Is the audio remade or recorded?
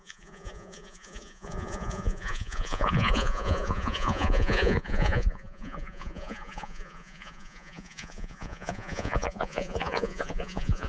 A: remade